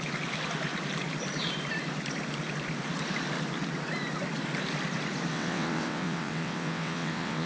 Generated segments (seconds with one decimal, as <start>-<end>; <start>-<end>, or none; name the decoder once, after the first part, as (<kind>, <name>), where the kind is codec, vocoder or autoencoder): 5.3-7.5 (vocoder, WaveNeXt)